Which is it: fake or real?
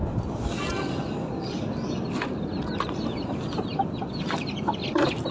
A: real